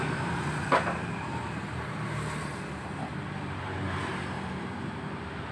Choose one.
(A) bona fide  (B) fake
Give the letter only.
B